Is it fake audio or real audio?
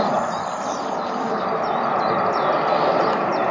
real